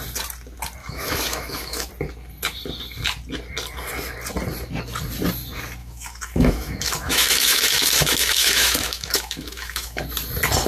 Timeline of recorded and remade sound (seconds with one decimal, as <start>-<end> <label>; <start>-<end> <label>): 0.0-0.8 recorded; 0.8-1.9 remade; 1.9-5.8 recorded; 5.8-10.0 remade; 10.0-10.7 recorded